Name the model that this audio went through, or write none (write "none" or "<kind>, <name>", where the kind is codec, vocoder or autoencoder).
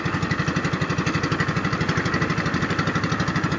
none